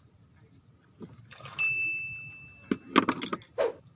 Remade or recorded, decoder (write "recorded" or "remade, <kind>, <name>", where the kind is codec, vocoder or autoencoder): recorded